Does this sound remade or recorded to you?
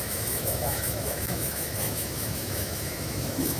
remade